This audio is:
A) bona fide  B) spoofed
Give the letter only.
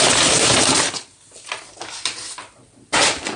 A